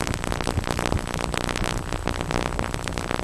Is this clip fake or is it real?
real